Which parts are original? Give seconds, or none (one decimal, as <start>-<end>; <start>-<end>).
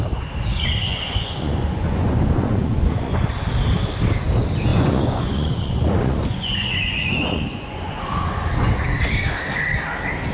0.0-0.5; 3.3-4.7; 8.8-10.3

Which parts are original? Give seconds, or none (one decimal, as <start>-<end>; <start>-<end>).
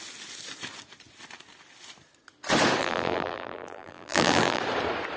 0.0-2.8; 4.6-5.2